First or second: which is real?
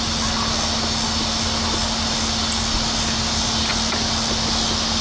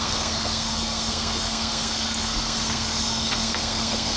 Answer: first